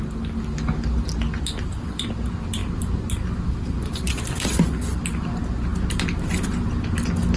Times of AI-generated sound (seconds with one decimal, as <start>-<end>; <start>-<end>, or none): none